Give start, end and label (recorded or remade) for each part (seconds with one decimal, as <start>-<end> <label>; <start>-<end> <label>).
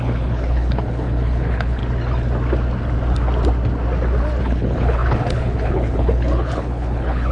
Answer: 0.0-1.8 remade; 1.8-4.4 recorded; 4.4-7.3 remade